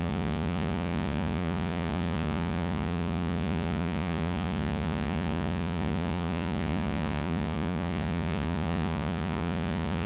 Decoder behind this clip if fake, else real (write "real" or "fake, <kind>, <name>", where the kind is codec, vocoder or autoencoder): fake, vocoder, Vocos